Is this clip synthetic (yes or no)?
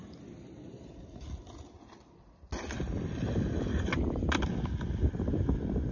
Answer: no